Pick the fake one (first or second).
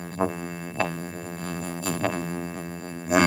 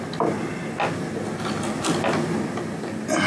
first